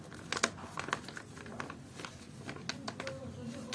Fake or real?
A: real